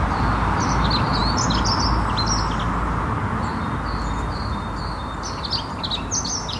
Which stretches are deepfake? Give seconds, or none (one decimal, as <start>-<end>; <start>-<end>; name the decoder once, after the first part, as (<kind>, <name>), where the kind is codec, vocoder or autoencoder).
none